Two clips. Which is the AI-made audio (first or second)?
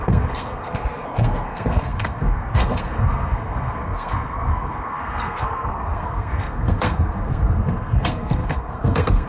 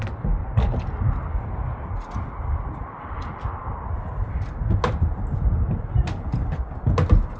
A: first